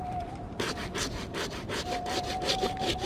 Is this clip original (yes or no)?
no